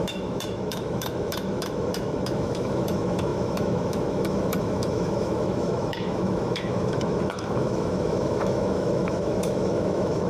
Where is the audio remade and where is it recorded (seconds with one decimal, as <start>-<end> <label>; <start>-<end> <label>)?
0.0-10.3 remade